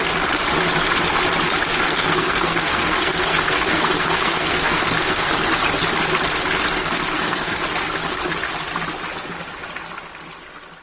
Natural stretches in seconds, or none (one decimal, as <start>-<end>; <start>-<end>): 0.0-1.7; 5.3-6.8; 7.6-10.8